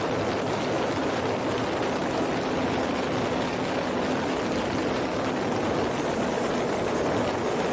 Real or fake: real